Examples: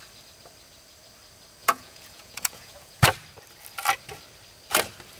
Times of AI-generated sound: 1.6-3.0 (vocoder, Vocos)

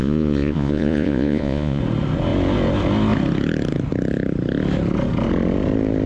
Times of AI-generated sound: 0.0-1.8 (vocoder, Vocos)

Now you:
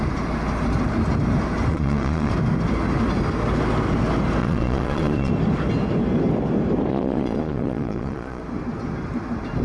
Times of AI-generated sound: 1.7-2.3 (vocoder, Vocos); 4.4-5.3; 6.9-8.4